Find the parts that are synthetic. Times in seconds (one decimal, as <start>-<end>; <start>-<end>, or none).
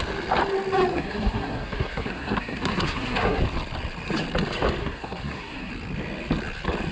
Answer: 0.9-3.4; 4.8-5.7